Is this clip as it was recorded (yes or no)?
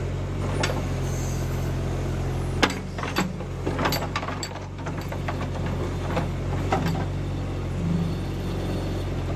yes